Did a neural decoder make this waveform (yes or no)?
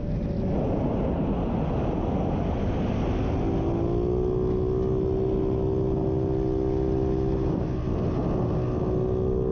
no